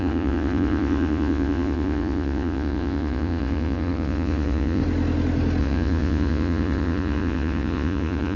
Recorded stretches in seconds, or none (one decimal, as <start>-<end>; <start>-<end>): 4.8-5.6